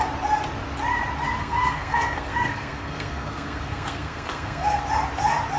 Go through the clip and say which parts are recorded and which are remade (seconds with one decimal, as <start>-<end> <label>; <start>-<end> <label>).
0.0-1.4 recorded; 1.4-4.8 remade; 4.8-5.6 recorded